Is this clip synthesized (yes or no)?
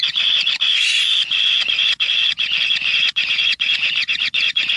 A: yes